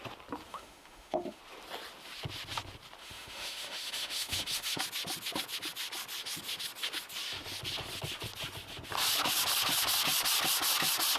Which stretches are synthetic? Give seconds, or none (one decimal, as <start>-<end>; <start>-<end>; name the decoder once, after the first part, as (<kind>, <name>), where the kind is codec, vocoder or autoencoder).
0.5-1.4 (autoencoder, DAC-VAE); 3.0-4.8